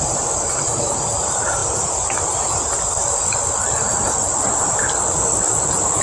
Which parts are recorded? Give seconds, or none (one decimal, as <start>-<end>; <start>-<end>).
0.0-6.0